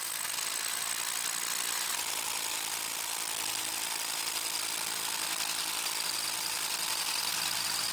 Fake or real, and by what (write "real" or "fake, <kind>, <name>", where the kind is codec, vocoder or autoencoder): real